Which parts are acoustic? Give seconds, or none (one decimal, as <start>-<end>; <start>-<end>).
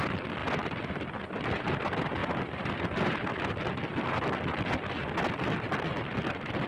0.4-1.4; 2.2-5.3